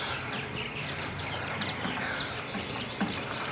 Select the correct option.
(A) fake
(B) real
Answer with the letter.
A